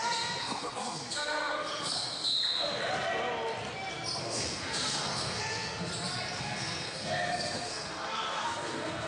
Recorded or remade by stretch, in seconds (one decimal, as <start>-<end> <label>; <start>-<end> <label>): 0.0-2.8 remade; 2.8-4.2 recorded; 4.2-5.9 remade; 5.9-6.4 recorded; 6.4-9.1 remade